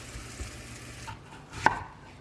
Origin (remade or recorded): recorded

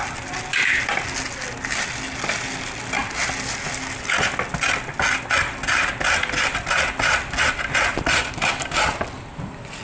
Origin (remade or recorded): recorded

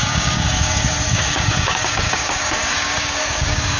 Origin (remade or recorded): remade